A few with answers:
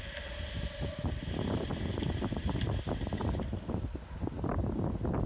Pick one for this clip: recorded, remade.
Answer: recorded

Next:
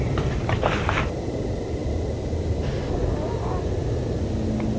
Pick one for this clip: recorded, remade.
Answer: recorded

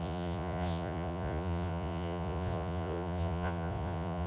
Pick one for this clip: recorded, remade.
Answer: remade